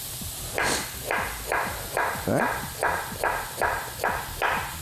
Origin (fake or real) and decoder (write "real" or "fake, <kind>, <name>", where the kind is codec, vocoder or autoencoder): real